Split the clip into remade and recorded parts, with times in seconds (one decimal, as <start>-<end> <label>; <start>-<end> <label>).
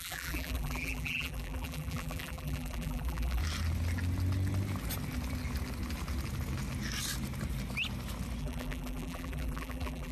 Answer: 0.0-3.4 remade; 3.4-8.4 recorded; 8.4-10.1 remade